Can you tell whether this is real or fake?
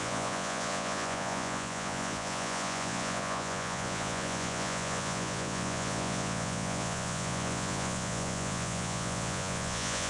fake